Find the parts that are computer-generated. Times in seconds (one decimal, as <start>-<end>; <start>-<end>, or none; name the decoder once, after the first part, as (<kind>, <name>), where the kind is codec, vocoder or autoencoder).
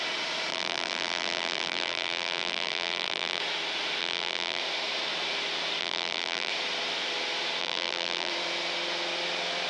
0.5-3.4 (vocoder, BigVGAN v2); 4.0-4.6; 5.8-6.5; 7.6-8.3